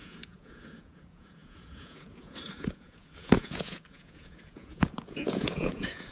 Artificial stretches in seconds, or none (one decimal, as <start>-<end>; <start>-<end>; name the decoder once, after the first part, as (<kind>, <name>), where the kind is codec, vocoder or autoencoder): 0.0-6.1 (vocoder, Vocos)